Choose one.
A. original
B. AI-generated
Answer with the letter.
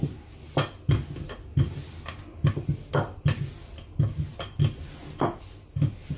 A